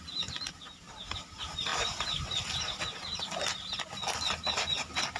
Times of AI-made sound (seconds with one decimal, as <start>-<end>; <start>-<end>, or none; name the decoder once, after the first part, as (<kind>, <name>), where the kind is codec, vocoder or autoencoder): none

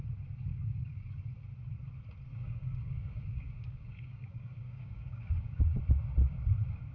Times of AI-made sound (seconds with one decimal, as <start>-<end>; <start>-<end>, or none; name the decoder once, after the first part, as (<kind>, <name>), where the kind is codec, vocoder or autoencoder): 0.5-1.1 (codec, DAC); 2.3-5.6

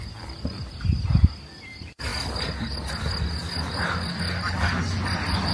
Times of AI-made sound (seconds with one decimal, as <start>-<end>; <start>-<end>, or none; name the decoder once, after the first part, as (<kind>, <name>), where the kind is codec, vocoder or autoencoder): none